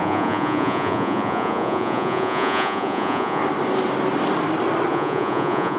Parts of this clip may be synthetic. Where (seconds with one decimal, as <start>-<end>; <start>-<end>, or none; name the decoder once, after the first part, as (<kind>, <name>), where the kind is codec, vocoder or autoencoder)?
0.0-3.4 (vocoder, Vocos); 4.9-5.8